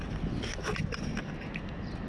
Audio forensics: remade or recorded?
recorded